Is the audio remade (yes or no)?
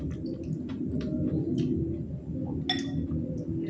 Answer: no